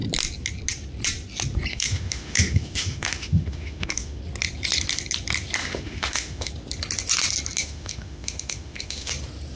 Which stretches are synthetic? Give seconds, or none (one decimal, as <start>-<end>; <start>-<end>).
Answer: 1.7-4.2; 5.6-6.5; 7.6-9.1